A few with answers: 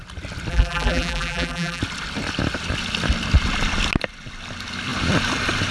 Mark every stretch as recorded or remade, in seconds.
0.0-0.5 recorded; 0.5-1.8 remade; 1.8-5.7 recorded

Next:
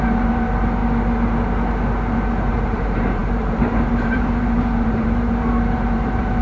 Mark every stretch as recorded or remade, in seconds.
0.0-0.8 remade; 0.8-2.5 recorded; 2.5-6.4 remade

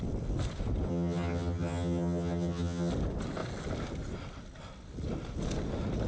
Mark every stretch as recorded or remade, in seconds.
0.0-0.9 recorded; 0.9-2.9 remade; 2.9-6.1 recorded

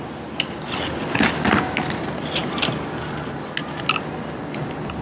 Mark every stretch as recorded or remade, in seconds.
0.0-5.0 recorded

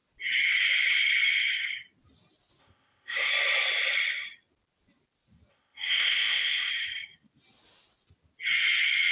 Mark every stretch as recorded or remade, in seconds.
0.0-2.6 recorded; 2.6-3.3 remade; 3.3-5.5 recorded; 5.5-6.7 remade; 6.7-9.1 recorded

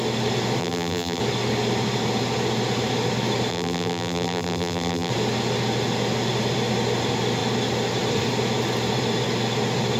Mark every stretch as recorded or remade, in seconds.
0.0-0.6 recorded; 0.6-1.2 remade; 1.2-3.5 recorded; 3.5-5.1 remade; 5.1-10.0 recorded